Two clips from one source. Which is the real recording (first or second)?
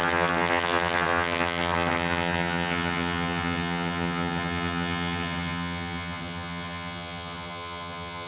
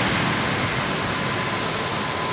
second